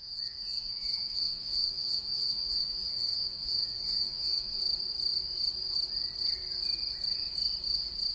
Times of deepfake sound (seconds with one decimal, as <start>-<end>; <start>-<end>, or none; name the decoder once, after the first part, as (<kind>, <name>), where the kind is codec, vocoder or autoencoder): 0.0-4.6 (vocoder, Vocos)